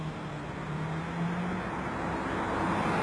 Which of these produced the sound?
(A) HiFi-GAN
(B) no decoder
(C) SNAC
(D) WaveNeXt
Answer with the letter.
B